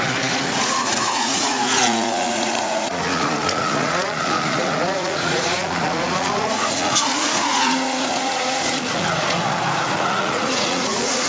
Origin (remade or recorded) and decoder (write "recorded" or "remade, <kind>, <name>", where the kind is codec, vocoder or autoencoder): remade, vocoder, Vocos